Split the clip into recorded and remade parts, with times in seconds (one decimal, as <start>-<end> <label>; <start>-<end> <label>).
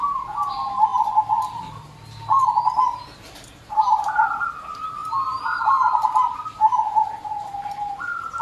0.0-0.9 recorded; 0.9-2.4 remade; 2.4-8.4 recorded